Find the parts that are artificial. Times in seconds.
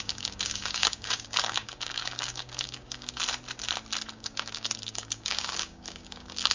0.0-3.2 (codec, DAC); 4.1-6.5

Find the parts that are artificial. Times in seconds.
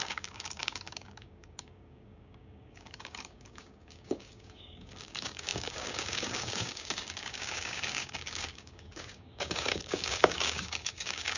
0.0-11.4 (codec, DAC)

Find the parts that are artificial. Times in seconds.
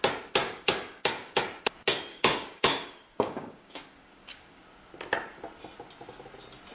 0.4-1.4 (codec, DAC); 2.1-4.6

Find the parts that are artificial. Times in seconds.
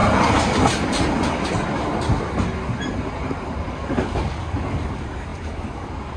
3.7-6.2 (codec, DAC)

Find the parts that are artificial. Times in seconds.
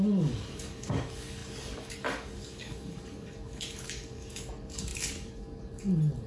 0.0-6.3 (codec, DAC)